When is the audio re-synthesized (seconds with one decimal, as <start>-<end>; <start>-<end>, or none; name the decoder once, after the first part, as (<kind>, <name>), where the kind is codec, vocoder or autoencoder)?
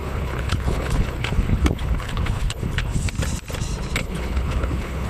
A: 0.0-3.1 (codec, HILCodec); 4.0-5.1